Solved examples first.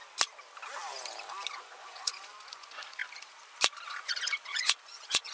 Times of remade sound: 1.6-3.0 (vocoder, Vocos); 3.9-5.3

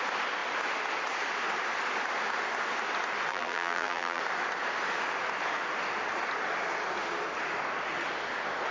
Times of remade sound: 3.3-4.2 (vocoder, BigVGAN v2)